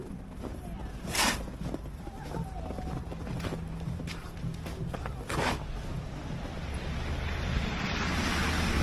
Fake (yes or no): no